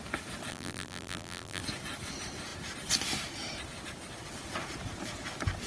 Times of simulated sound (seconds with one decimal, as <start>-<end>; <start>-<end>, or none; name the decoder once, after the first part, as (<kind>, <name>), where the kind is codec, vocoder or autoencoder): 0.5-1.6 (vocoder, BigVGAN v2)